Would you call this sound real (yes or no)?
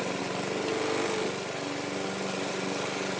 yes